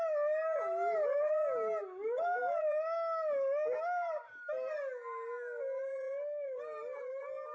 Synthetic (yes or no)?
no